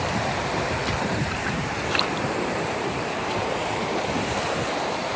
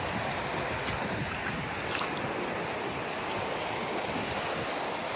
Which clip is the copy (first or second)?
first